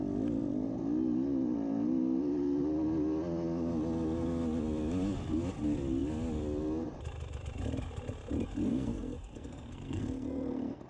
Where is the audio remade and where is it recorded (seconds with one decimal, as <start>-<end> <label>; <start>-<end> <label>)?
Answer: 0.0-8.7 recorded; 8.7-10.9 remade